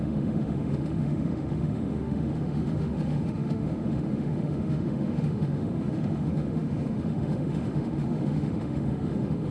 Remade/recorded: remade